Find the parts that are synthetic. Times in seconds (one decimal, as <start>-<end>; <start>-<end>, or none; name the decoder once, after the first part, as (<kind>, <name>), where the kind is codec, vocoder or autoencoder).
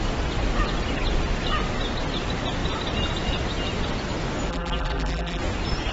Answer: 4.5-5.4 (vocoder, BigVGAN v2)